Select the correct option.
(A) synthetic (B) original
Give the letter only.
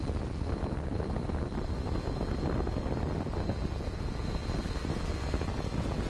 B